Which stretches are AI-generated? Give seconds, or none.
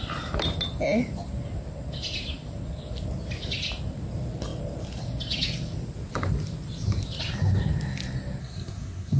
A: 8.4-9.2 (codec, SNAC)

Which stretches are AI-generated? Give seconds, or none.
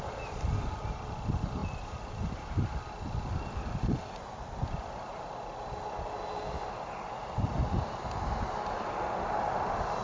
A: none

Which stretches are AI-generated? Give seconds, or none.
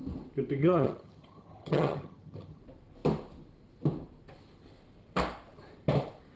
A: 0.6-2.6 (vocoder, HiFi-GAN)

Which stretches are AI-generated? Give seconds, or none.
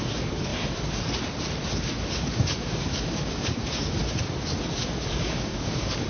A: 0.0-0.5 (codec, DAC); 2.1-4.0; 4.7-6.1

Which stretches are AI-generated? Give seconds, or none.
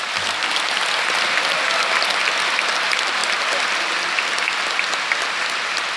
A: 3.2-4.1 (vocoder, BigVGAN v2)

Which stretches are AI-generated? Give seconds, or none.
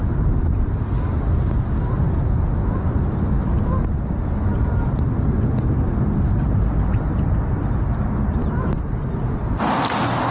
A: none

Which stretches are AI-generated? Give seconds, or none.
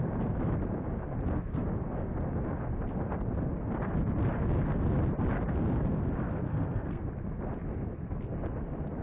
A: 6.5-7.0 (codec, SNAC)